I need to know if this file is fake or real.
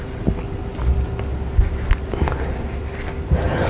real